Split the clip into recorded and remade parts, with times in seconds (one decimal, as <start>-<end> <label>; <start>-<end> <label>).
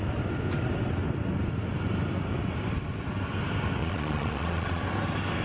0.0-3.8 recorded; 3.8-4.8 remade; 4.8-5.4 recorded